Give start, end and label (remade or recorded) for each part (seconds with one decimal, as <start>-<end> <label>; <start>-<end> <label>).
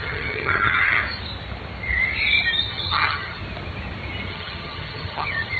0.0-1.0 remade; 1.0-2.7 recorded; 2.7-3.4 remade; 3.4-4.3 recorded; 4.3-5.6 remade